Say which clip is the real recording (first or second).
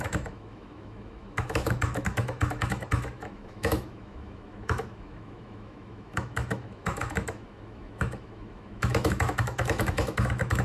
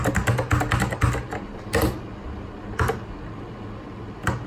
second